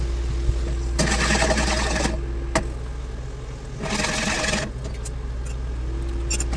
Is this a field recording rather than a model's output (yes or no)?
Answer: yes